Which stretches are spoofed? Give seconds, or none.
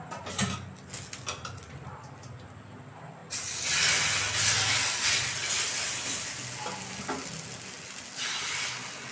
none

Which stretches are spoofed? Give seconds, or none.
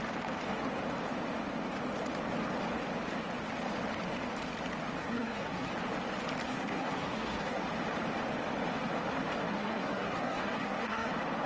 5.0-5.7; 6.4-7.6; 9.5-11.1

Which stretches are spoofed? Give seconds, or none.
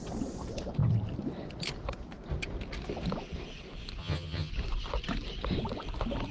4.0-4.5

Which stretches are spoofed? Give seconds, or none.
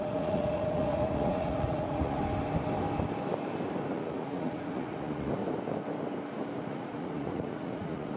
0.0-2.2; 3.9-5.4; 6.7-8.2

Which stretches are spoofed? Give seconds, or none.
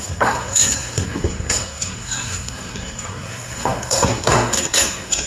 0.0-5.3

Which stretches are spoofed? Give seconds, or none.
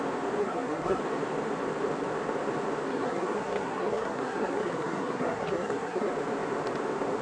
0.4-1.0; 2.9-6.1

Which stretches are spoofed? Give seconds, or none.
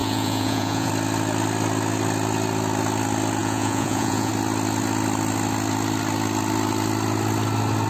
0.0-0.9; 3.4-4.3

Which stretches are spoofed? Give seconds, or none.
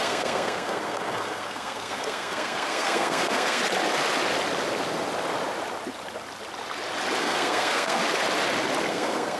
0.0-3.6; 7.2-8.0; 8.9-9.4